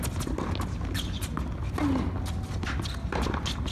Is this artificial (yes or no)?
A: no